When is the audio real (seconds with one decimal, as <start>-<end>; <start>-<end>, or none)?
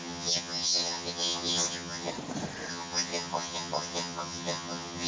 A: 2.1-2.7